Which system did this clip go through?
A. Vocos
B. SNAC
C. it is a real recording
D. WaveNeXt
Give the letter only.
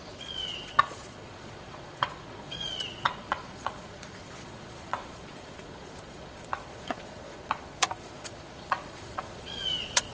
A